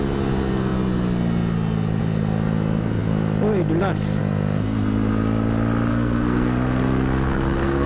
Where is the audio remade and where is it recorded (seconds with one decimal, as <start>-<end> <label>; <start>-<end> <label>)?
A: 0.0-5.9 recorded; 5.9-7.9 remade